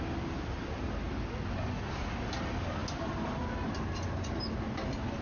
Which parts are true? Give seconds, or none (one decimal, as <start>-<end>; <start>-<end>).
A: 0.0-5.2